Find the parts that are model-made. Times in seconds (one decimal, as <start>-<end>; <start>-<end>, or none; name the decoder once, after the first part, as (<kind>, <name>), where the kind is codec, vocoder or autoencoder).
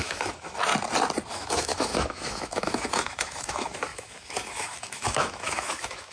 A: 0.0-0.7 (autoencoder, DAC-VAE); 1.3-6.1